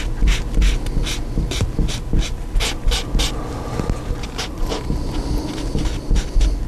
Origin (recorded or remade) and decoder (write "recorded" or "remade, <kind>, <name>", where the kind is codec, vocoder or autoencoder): recorded